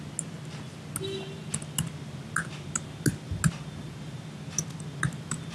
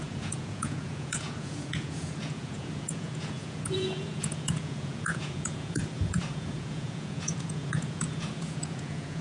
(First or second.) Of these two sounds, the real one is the first